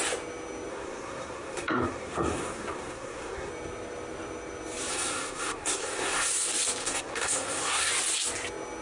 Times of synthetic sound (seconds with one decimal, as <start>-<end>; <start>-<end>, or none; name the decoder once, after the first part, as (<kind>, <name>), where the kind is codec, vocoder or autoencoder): 0.7-3.5 (codec, SNAC); 4.9-6.3; 6.8-7.9

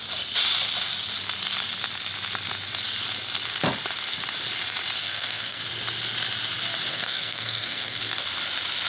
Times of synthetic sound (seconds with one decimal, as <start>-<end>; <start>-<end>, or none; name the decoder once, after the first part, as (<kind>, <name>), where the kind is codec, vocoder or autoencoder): 5.0-5.6 (codec, SNAC); 6.9-8.0